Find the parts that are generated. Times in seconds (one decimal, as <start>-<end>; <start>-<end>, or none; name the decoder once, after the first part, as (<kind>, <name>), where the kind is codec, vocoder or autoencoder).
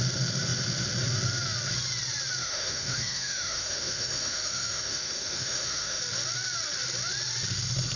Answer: 2.4-6.0 (autoencoder, DAC-VAE)